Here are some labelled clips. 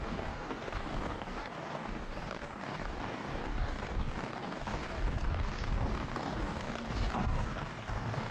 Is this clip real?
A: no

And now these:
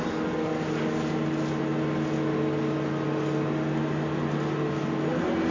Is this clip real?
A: yes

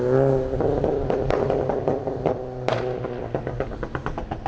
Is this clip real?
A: yes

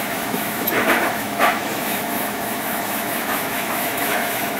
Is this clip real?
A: no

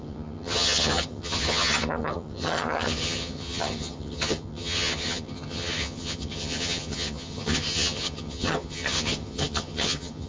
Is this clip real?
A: no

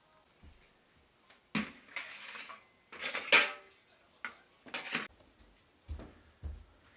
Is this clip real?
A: yes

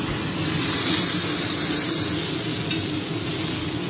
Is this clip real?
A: yes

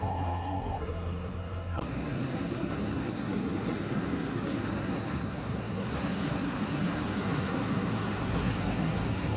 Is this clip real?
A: no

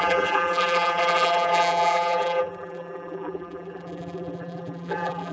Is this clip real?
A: no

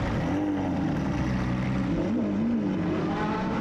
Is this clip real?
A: yes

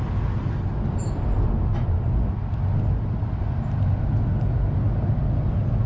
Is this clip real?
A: yes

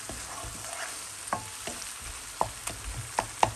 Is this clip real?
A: yes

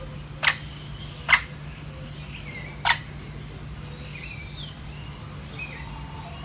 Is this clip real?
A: yes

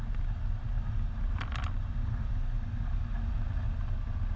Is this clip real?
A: yes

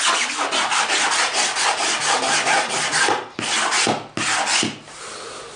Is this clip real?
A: yes